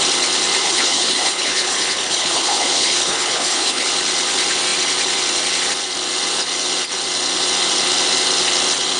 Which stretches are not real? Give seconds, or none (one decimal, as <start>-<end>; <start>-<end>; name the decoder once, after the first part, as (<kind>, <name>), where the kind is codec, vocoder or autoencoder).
0.6-3.9 (codec, HILCodec)